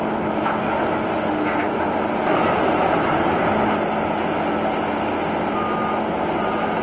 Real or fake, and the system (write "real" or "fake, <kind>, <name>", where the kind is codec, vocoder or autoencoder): real